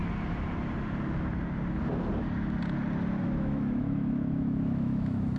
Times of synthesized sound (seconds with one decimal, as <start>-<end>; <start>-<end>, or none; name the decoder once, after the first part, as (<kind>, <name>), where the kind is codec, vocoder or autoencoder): 3.2-5.4 (autoencoder, DAC-VAE)